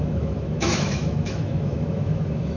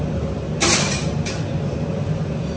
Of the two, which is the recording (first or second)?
second